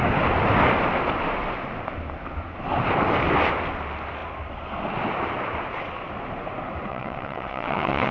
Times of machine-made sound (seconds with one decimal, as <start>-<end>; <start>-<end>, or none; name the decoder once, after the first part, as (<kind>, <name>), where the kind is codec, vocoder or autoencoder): 6.9-8.1 (vocoder, WaveNeXt)